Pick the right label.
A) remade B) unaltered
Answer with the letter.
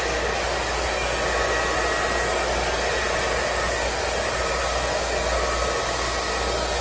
B